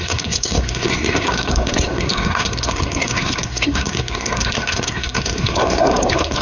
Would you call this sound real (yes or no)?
no